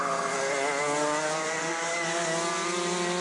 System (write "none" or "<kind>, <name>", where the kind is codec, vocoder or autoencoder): none